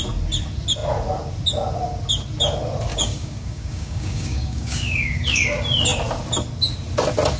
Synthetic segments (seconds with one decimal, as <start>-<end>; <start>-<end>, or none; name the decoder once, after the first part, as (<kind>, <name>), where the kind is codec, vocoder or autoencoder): 2.9-5.4 (codec, DAC)